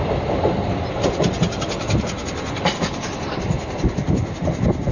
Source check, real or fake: real